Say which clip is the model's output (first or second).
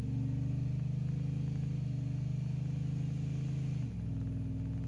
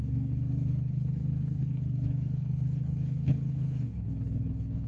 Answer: second